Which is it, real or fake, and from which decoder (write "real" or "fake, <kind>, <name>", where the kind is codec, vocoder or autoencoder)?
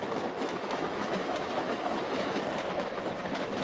fake, autoencoder, DAC-VAE